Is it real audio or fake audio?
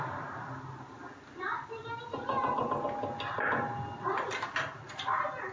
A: real